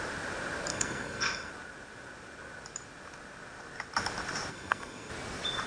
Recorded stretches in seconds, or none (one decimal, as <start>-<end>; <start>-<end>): 0.0-0.7; 1.5-4.5; 5.1-5.7